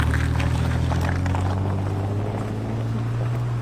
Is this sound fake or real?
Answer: real